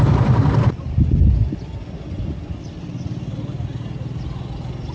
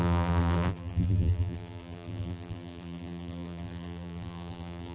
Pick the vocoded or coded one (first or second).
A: second